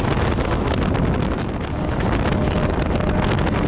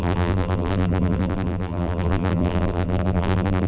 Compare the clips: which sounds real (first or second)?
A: first